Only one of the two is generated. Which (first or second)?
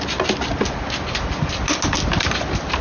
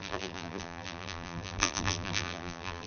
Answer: second